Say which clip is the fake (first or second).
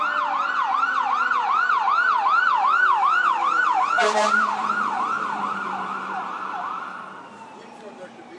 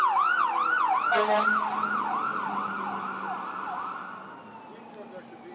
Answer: first